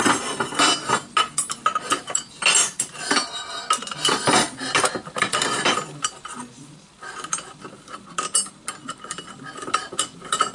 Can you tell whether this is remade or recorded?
recorded